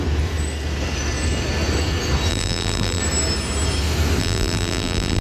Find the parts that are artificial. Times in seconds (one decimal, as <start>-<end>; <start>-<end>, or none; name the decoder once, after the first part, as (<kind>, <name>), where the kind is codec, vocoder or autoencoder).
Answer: 2.3-3.0 (vocoder, BigVGAN v2); 4.2-5.2